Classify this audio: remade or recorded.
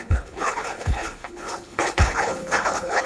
remade